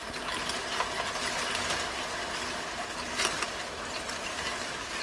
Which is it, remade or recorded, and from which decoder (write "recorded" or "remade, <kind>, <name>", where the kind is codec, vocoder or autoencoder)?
recorded